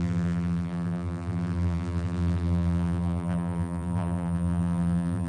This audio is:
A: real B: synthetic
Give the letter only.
B